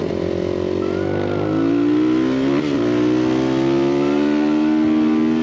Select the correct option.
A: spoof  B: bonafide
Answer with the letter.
B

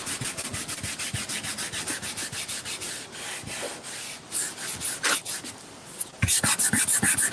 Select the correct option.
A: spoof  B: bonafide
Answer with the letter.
B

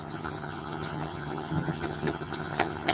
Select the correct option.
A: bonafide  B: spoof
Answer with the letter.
B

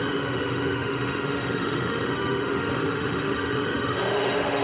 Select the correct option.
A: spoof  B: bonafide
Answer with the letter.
A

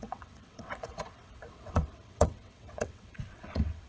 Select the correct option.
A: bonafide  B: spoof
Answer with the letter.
B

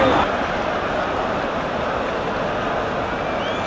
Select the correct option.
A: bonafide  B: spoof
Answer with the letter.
A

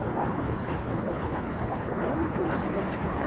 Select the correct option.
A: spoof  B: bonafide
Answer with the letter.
A